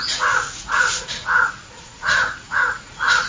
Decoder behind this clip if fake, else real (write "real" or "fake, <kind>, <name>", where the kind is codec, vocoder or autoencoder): fake, vocoder, Vocos